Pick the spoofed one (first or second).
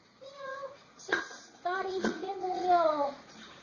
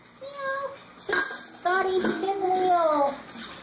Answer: first